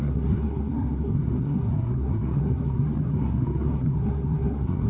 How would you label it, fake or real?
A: fake